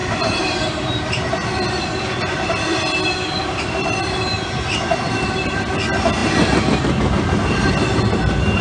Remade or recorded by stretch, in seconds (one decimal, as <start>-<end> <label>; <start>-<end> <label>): 0.0-4.2 remade; 4.2-8.6 recorded